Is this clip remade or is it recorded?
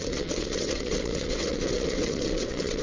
remade